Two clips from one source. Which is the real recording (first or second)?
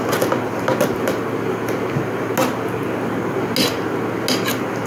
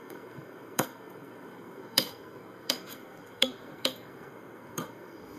first